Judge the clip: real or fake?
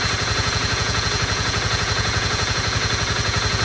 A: fake